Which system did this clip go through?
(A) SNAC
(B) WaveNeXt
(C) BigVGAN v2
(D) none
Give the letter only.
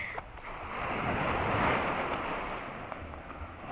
D